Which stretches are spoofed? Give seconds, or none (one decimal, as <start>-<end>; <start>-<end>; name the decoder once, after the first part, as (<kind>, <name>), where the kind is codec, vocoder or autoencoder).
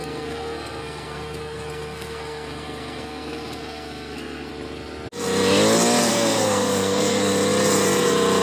0.0-4.5 (codec, SNAC); 6.1-7.3